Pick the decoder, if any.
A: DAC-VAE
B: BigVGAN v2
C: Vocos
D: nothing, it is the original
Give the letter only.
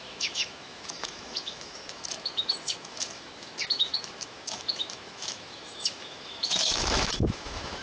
A